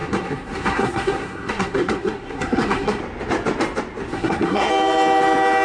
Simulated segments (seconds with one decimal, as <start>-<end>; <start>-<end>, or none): 0.0-3.0; 4.1-4.7